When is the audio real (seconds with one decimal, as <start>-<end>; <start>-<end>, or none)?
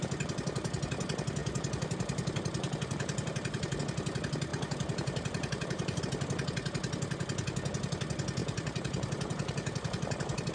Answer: 0.0-1.4; 3.8-4.5; 6.0-8.4